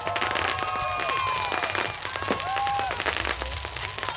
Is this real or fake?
real